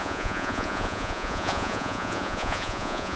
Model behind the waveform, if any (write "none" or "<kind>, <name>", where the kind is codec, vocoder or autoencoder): vocoder, Vocos